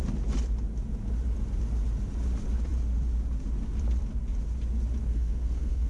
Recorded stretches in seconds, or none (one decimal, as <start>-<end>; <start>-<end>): 0.0-5.1